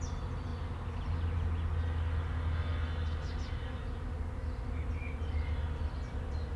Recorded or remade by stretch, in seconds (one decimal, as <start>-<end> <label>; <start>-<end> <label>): 0.0-6.6 recorded